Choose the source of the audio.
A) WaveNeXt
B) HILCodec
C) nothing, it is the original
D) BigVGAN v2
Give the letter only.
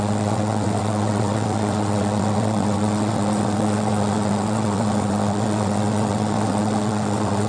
A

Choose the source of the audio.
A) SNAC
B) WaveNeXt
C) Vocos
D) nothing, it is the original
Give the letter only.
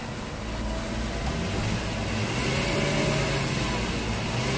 D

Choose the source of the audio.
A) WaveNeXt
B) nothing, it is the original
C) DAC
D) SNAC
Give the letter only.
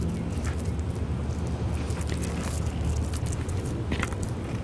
B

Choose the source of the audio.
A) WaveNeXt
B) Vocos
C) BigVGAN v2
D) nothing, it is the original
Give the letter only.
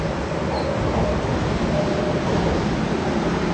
D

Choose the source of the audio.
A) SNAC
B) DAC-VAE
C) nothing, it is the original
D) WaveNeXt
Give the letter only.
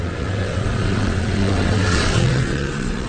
D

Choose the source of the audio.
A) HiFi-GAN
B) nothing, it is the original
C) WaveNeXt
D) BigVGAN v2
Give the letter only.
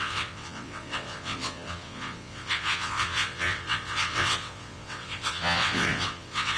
C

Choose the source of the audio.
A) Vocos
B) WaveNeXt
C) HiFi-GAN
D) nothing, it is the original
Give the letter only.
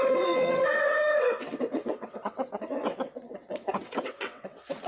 B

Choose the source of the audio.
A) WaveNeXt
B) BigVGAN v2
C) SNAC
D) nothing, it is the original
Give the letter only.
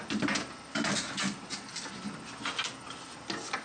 D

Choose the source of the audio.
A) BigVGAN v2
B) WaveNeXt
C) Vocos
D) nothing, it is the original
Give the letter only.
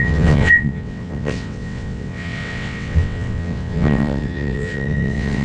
B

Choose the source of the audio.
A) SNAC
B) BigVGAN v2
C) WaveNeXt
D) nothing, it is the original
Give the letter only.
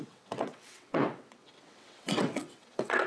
C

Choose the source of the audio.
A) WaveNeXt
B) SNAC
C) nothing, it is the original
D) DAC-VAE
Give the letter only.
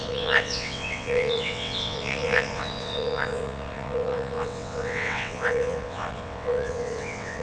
A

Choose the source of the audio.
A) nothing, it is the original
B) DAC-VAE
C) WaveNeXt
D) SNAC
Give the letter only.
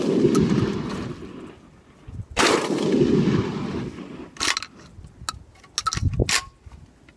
A